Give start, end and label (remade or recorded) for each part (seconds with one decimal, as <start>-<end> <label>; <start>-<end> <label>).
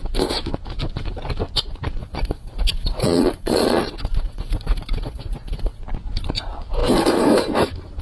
0.0-2.0 recorded; 2.0-5.8 remade; 5.8-8.0 recorded